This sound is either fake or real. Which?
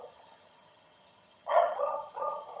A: fake